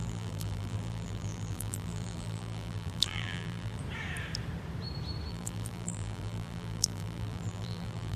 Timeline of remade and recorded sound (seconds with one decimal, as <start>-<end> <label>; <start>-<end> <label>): 0.0-3.8 remade; 3.8-5.3 recorded; 5.3-8.2 remade